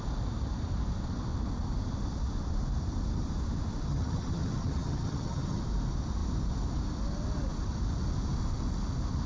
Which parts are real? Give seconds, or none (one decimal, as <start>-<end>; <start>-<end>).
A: 0.0-3.9; 5.6-9.3